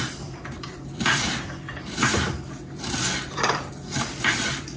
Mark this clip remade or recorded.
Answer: remade